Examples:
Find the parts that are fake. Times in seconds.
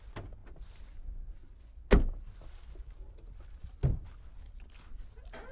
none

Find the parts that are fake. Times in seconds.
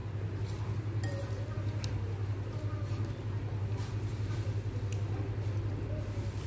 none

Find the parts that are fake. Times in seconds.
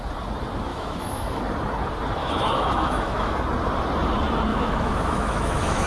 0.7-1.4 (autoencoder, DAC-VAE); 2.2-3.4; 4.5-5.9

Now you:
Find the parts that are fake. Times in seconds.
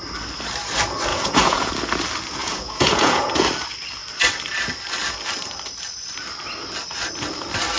1.1-1.7 (vocoder, Vocos); 2.4-3.3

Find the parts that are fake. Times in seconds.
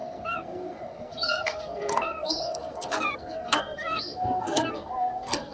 0.0-5.5 (codec, SNAC)